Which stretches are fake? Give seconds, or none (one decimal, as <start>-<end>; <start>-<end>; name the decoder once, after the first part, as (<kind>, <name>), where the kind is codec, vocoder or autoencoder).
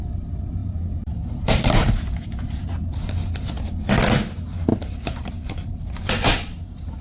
0.6-2.4 (vocoder, BigVGAN v2); 4.7-7.0